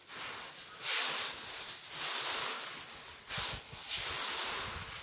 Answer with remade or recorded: recorded